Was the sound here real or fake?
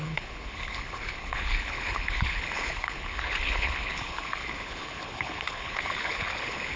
fake